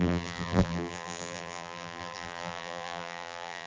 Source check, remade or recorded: remade